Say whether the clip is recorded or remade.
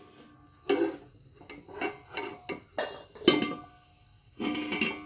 recorded